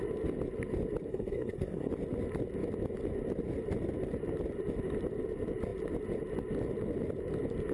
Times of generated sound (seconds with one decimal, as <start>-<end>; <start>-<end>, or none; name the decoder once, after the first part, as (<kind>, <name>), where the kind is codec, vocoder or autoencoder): 1.1-1.9 (codec, SNAC)